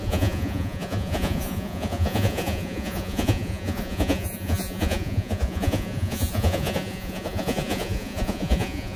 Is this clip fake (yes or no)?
yes